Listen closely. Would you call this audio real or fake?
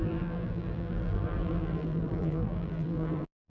fake